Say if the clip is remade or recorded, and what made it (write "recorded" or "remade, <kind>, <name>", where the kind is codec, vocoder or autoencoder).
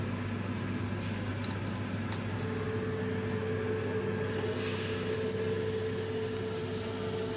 recorded